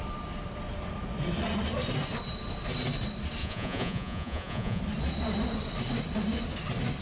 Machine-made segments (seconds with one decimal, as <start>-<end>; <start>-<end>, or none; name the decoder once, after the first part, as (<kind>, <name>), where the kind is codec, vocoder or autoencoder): 3.4-4.8 (vocoder, Vocos)